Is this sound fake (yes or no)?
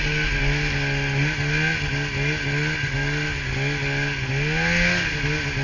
no